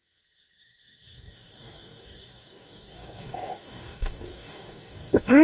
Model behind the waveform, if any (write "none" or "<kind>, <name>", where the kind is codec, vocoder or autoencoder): codec, DAC